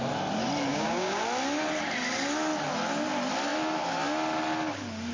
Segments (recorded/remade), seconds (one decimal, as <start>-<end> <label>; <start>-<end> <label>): 0.0-0.7 recorded; 0.7-1.2 remade; 1.2-5.1 recorded